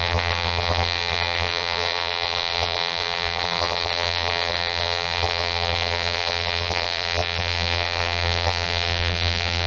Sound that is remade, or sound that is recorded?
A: remade